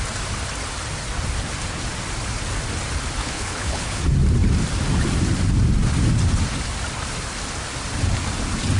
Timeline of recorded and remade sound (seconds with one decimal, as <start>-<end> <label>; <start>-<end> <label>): 0.0-3.2 recorded; 3.2-4.0 remade; 4.0-8.8 recorded